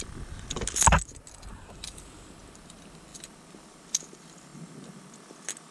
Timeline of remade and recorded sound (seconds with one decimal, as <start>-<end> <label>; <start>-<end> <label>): 0.0-5.7 recorded